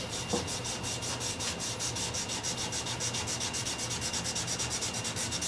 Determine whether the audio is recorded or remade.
recorded